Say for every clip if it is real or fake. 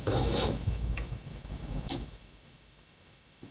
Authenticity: fake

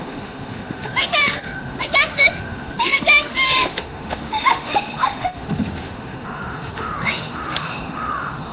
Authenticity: fake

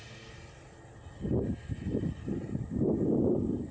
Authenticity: real